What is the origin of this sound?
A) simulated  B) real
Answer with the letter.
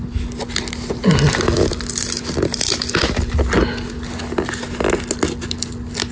B